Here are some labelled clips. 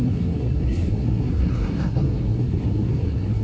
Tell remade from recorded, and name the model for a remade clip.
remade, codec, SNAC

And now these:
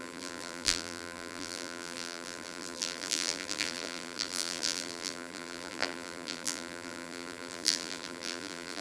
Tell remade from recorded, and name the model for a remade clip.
remade, vocoder, BigVGAN v2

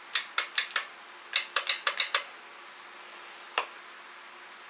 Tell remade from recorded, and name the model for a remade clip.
recorded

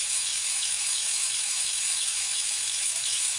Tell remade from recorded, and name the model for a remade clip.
remade, autoencoder, DAC-VAE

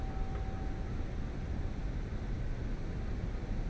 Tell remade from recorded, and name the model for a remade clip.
recorded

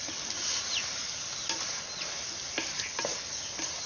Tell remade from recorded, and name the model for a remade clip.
recorded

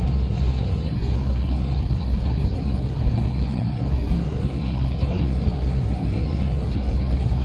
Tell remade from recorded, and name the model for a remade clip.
remade, codec, SNAC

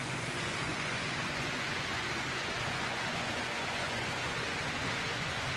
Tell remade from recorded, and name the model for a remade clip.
remade, vocoder, Vocos